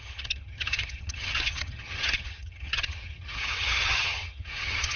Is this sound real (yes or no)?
no